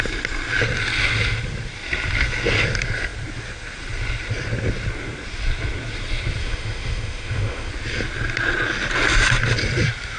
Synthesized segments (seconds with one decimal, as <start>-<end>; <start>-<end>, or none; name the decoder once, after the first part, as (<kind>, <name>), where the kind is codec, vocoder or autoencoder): 6.4-7.7 (autoencoder, DAC-VAE)